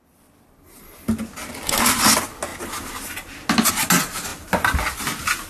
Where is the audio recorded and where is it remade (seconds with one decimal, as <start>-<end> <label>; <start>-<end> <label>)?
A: 0.0-5.5 recorded